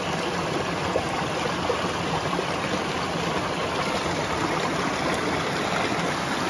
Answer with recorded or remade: recorded